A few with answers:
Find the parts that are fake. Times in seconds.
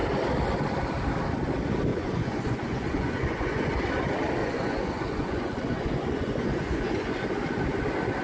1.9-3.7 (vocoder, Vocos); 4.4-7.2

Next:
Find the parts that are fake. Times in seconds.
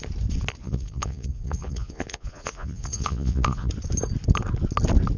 0.6-3.7 (vocoder, Vocos)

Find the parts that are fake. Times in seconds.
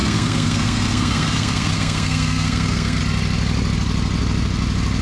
0.0-3.0 (codec, SNAC)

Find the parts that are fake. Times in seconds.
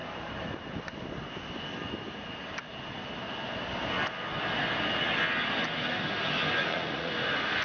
6.6-7.1 (vocoder, Vocos)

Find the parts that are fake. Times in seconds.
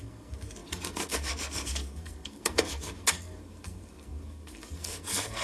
0.0-5.4 (codec, SNAC)